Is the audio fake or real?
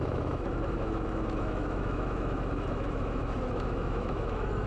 fake